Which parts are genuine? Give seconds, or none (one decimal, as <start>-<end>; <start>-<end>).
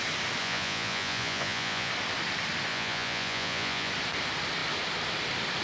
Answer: 0.0-0.4; 1.9-2.7; 3.9-5.6